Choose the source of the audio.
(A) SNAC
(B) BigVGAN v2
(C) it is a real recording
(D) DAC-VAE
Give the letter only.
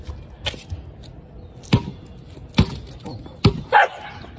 C